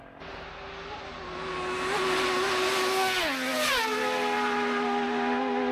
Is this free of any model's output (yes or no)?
yes